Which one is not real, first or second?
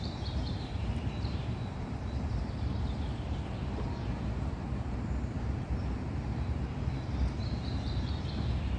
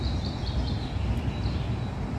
first